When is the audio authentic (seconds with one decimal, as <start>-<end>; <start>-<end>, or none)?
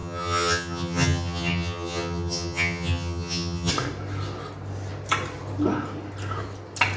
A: 3.7-7.0